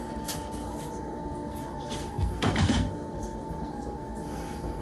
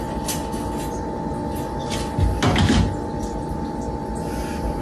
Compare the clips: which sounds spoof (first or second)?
first